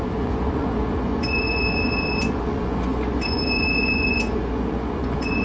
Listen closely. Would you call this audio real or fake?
fake